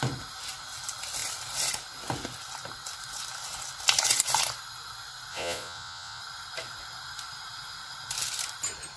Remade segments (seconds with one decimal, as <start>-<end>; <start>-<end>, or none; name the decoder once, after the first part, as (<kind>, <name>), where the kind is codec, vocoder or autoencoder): 5.3-6.2 (vocoder, Vocos)